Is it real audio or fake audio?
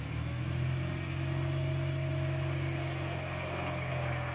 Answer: real